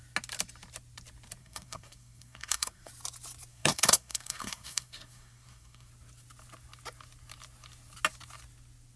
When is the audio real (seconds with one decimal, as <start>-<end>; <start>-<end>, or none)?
0.0-1.4; 2.9-3.5; 5.9-9.0